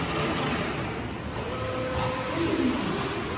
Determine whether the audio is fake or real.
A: real